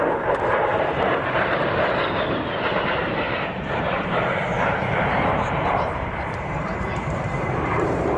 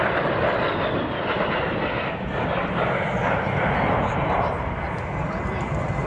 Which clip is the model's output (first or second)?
first